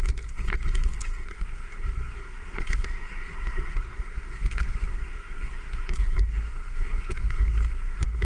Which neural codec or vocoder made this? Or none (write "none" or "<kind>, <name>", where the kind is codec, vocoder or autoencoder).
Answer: codec, SNAC